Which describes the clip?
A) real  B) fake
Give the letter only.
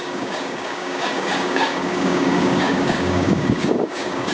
B